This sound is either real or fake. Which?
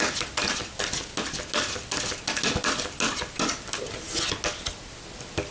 real